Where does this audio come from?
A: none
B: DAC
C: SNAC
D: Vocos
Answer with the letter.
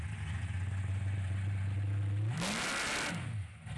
A